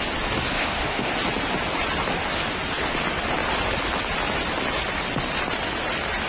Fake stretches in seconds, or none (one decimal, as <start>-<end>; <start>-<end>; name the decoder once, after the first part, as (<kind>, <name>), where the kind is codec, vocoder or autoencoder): 0.5-1.1 (autoencoder, DAC-VAE)